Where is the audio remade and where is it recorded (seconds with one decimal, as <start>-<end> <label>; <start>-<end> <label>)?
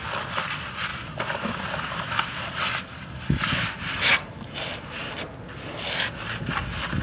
0.0-7.0 recorded